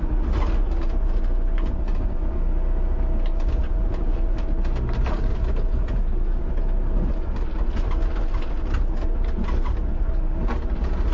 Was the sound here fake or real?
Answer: real